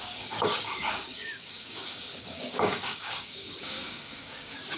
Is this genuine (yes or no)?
no